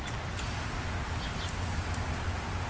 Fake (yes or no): no